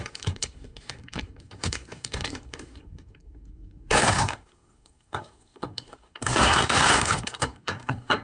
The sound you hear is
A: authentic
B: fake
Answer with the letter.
B